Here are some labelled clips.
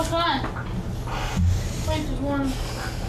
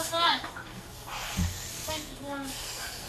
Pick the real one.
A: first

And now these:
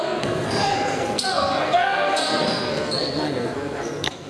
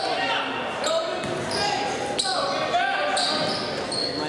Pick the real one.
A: second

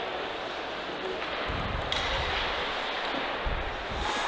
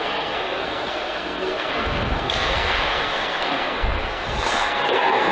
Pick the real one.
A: first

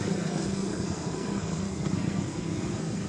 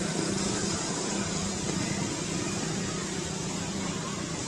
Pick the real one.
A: second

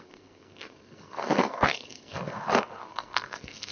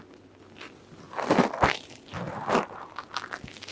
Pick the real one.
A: second